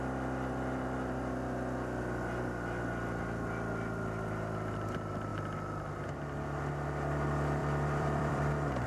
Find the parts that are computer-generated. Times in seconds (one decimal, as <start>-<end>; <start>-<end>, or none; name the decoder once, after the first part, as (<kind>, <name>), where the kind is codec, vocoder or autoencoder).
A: 7.6-8.5 (vocoder, BigVGAN v2)